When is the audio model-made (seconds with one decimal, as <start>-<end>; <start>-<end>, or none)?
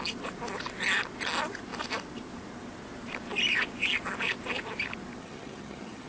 5.2-6.1